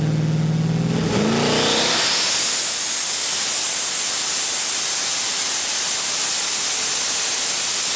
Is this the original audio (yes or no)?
yes